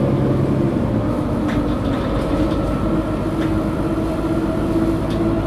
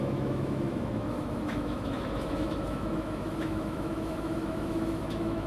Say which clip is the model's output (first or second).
second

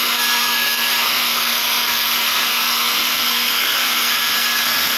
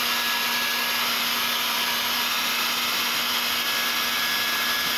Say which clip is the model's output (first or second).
first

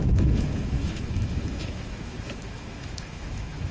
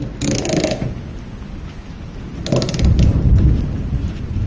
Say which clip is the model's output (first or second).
first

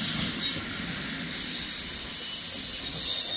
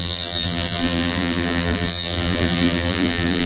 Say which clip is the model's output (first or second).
second